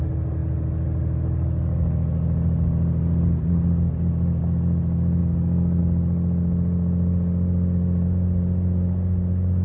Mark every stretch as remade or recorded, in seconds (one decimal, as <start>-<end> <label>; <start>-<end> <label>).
0.0-9.6 recorded

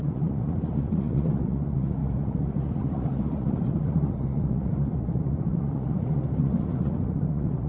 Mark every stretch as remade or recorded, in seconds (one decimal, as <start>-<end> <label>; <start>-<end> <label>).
0.0-7.7 remade

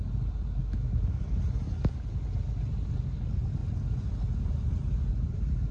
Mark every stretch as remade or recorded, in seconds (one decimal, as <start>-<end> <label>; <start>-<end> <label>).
0.0-0.6 recorded; 0.6-1.2 remade; 1.2-5.7 recorded

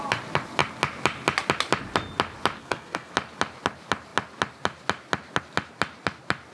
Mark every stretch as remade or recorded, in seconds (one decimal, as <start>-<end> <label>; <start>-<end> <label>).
0.0-2.6 recorded; 2.6-3.1 remade; 3.1-6.5 recorded

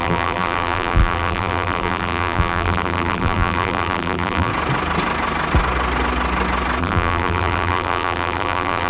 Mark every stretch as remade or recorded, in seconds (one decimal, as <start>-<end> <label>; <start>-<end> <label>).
0.0-4.5 remade; 4.5-6.8 recorded; 6.8-8.9 remade

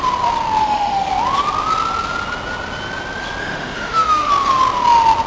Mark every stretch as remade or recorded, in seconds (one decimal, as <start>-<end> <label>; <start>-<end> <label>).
0.0-0.6 recorded; 0.6-1.1 remade; 1.1-3.4 recorded; 3.4-4.3 remade; 4.3-5.3 recorded

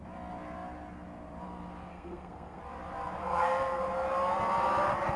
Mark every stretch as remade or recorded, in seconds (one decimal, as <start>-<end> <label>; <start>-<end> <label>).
0.0-1.9 recorded; 1.9-2.6 remade; 2.6-3.2 recorded; 3.2-3.8 remade; 3.8-5.2 recorded